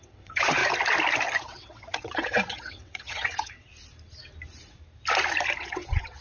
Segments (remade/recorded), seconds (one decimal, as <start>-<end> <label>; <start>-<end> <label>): 0.0-0.6 remade; 0.6-1.4 recorded; 1.4-3.7 remade; 3.7-5.6 recorded; 5.6-6.2 remade